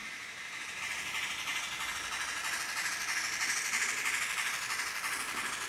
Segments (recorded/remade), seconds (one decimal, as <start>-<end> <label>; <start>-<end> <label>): 0.0-0.8 remade; 0.8-5.7 recorded